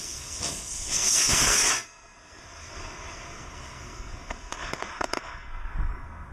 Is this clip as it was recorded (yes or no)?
no